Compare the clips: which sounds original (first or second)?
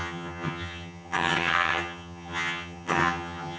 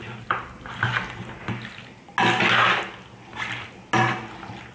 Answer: second